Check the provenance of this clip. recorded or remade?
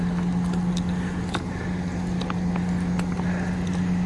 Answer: recorded